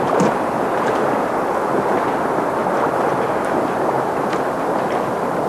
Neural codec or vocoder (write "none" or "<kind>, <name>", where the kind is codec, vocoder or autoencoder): none